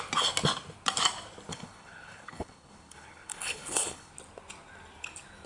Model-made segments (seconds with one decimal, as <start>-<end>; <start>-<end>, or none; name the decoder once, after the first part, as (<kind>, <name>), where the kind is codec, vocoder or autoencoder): 1.5-4.1 (codec, HILCodec)